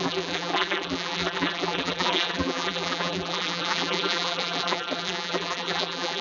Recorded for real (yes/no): no